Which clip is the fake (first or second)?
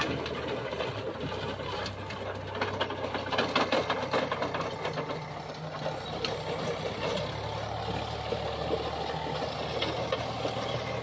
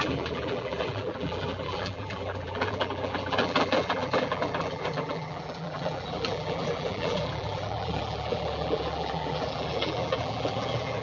second